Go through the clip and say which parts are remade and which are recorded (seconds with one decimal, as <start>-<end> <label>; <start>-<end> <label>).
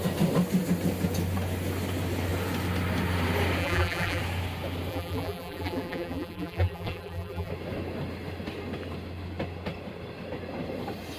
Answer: 0.0-3.6 recorded; 3.6-4.2 remade; 4.2-4.9 recorded; 4.9-7.5 remade; 7.5-11.2 recorded